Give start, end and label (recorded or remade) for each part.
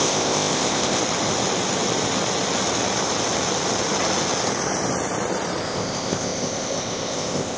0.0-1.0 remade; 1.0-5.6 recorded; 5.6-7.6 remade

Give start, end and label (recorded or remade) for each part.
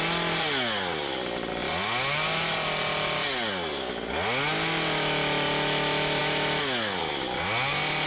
0.0-8.1 recorded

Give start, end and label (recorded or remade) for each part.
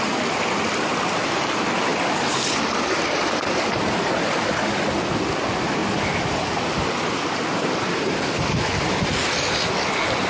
0.0-10.3 recorded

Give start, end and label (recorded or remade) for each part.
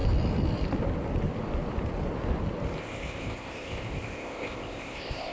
0.0-2.8 recorded; 2.8-5.3 remade